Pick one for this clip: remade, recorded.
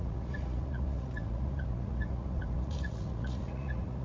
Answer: remade